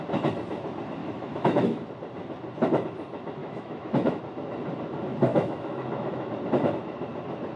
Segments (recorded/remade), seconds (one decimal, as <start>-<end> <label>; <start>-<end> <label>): 0.0-1.0 recorded; 1.0-1.9 remade; 1.9-3.4 recorded; 3.4-4.2 remade; 4.2-5.3 recorded; 5.3-6.3 remade; 6.3-7.6 recorded